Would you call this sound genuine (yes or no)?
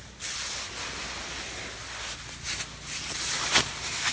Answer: yes